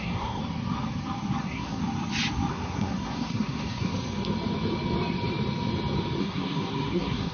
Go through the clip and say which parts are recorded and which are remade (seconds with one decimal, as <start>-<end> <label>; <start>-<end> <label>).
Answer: 0.0-0.4 remade; 0.4-1.4 recorded; 1.4-1.8 remade; 1.8-2.5 recorded; 2.5-3.9 remade; 3.9-6.2 recorded; 6.2-7.3 remade